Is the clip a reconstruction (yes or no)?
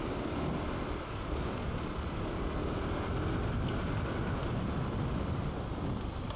no